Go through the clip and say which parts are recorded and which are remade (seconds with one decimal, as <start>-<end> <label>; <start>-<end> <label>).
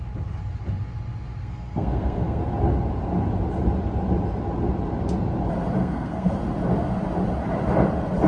0.0-1.4 recorded; 1.4-2.4 remade; 2.4-5.8 recorded; 5.8-6.3 remade; 6.3-8.3 recorded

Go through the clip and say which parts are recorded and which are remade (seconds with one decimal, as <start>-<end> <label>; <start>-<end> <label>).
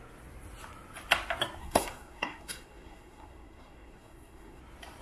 0.0-1.6 recorded; 1.6-4.6 remade; 4.6-5.0 recorded